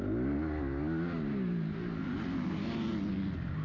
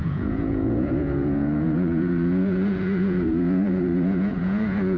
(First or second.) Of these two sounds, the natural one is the first